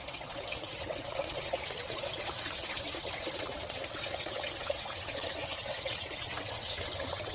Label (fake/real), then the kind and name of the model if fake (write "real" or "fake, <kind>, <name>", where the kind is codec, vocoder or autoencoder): fake, vocoder, WaveNeXt